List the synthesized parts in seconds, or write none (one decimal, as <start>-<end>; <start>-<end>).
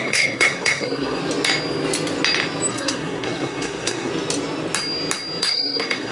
0.0-1.2; 2.7-4.1; 5.4-6.1